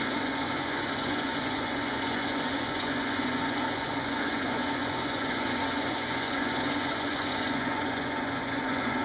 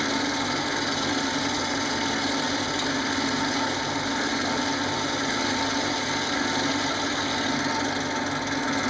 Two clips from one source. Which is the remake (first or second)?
first